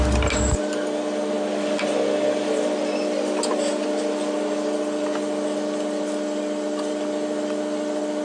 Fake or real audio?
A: real